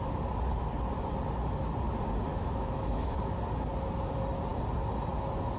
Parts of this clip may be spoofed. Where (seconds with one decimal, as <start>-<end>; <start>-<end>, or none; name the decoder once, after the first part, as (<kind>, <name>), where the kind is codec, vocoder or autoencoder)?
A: 2.3-3.1 (autoencoder, DAC-VAE)